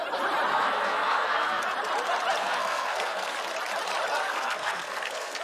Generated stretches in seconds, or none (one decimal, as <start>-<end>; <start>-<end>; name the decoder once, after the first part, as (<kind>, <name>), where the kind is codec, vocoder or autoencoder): 0.5-1.6 (codec, SNAC); 2.4-3.3; 4.2-5.4